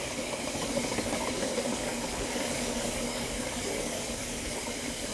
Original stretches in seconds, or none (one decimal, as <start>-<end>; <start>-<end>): none